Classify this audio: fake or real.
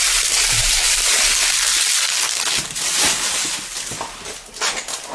real